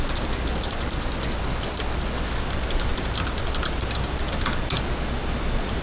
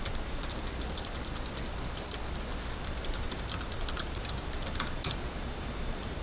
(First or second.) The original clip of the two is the first